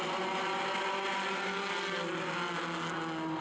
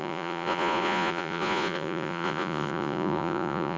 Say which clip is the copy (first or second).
second